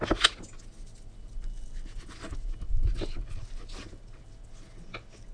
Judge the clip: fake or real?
real